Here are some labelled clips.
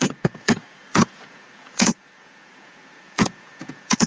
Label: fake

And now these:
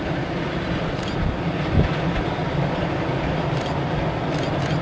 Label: real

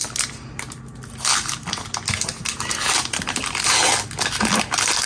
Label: real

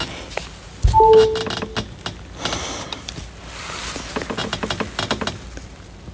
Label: real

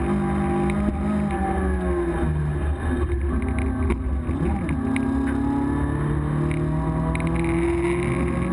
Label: real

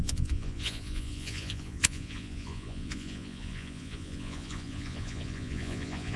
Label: fake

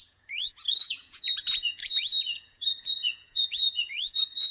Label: fake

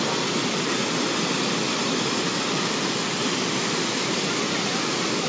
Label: real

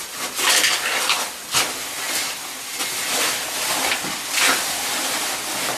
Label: real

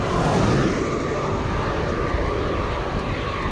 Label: real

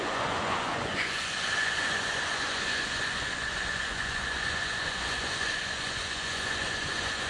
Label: fake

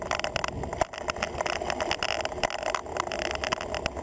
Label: real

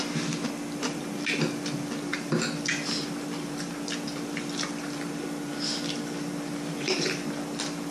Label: real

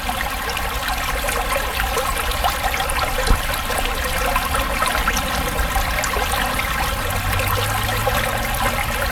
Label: real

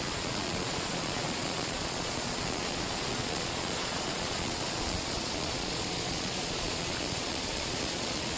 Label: fake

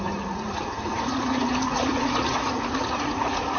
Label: fake